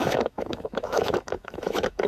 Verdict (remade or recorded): remade